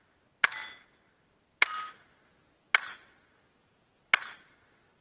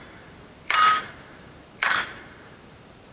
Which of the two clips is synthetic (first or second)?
second